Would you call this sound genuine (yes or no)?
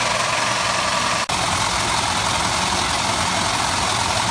yes